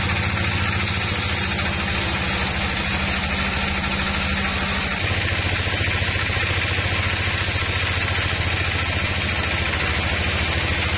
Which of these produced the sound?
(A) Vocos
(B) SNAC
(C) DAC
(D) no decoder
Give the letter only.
D